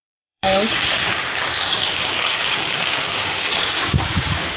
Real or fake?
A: fake